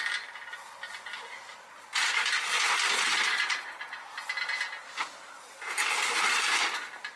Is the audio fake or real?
real